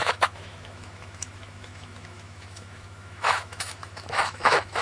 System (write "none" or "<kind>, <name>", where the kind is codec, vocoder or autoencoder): autoencoder, DAC-VAE